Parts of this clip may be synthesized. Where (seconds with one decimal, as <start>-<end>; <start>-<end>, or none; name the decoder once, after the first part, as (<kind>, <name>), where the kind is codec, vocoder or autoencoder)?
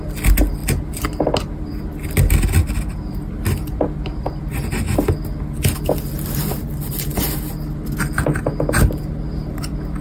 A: none